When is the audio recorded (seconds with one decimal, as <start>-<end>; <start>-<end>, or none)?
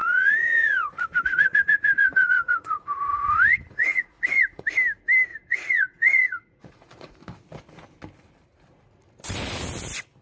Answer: 4.6-5.3; 7.1-10.2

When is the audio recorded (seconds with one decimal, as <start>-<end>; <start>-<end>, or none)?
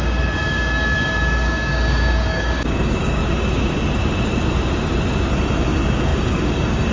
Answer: 3.2-5.3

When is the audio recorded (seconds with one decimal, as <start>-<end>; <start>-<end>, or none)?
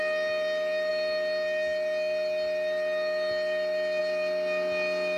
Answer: 0.0-5.2